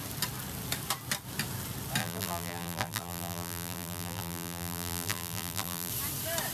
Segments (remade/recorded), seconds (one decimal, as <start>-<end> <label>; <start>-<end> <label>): 0.0-2.0 recorded; 2.0-5.9 remade; 5.9-6.5 recorded